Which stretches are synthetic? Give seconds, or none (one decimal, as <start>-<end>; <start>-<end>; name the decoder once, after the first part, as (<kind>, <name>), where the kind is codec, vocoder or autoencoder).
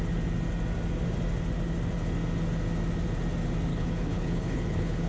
3.7-5.1 (codec, HILCodec)